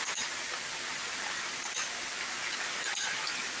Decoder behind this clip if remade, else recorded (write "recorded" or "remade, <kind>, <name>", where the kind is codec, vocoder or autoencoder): recorded